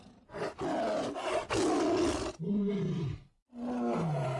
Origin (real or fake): real